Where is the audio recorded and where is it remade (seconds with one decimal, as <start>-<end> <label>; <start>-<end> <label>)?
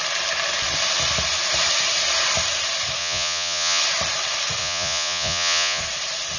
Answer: 0.0-3.0 recorded; 3.0-3.8 remade; 3.8-4.6 recorded; 4.6-5.8 remade; 5.8-6.4 recorded